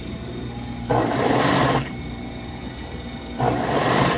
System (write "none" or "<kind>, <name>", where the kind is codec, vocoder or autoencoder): vocoder, BigVGAN v2